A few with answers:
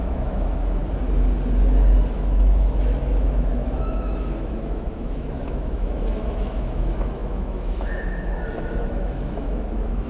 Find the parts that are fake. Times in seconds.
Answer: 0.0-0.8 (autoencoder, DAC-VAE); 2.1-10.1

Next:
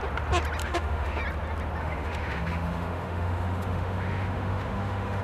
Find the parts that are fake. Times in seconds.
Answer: 0.6-1.2 (autoencoder, DAC-VAE); 1.8-5.2

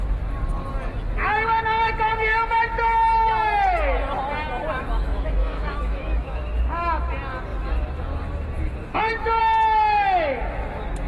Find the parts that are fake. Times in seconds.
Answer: 5.1-6.4 (autoencoder, DAC-VAE)

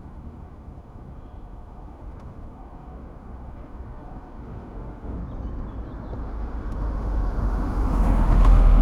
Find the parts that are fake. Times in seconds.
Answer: 0.0-5.2 (autoencoder, DAC-VAE); 6.2-8.8

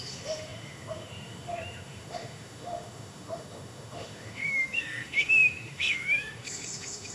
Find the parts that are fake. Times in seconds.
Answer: 0.0-7.1 (autoencoder, DAC-VAE)